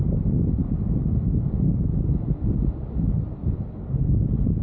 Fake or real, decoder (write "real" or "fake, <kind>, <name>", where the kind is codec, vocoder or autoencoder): real